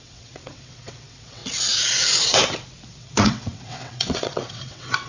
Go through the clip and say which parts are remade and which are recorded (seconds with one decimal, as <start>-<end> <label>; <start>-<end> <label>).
0.0-1.4 remade; 1.4-2.9 recorded; 2.9-5.1 remade